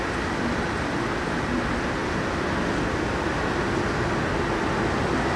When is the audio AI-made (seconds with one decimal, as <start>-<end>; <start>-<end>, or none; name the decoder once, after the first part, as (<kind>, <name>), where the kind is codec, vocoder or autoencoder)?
none